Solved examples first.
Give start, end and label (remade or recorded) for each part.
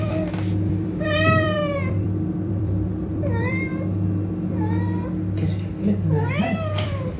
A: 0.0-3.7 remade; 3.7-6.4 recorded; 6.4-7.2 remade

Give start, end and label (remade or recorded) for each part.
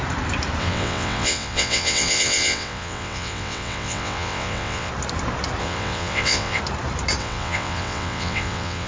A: 0.0-0.6 recorded; 0.6-4.9 remade; 4.9-5.6 recorded; 5.6-6.6 remade; 6.6-7.2 recorded; 7.2-8.9 remade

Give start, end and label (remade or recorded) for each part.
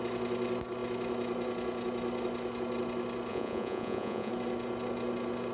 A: 0.0-3.3 recorded; 3.3-4.3 remade; 4.3-5.5 recorded